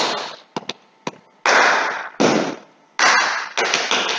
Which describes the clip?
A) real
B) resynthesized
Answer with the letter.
A